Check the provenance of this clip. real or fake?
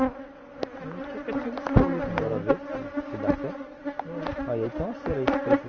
real